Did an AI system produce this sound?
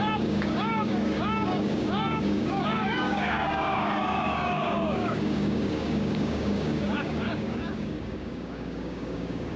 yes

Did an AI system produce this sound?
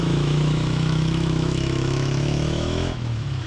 yes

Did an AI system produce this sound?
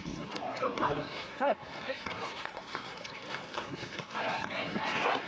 yes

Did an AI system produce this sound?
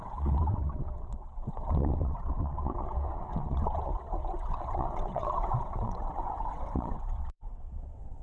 yes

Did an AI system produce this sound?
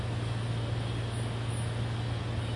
no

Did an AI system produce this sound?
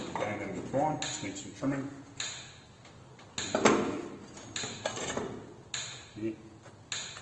no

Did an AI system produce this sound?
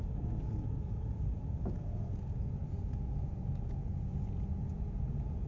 yes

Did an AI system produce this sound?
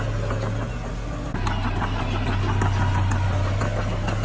no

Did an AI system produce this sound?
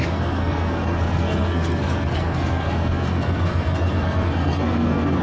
yes